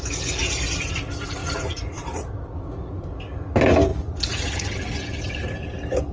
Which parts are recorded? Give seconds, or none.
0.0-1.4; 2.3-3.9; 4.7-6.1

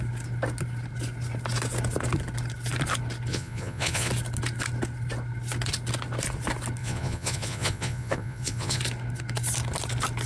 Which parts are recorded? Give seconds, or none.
0.0-3.3; 4.1-6.8; 8.8-10.3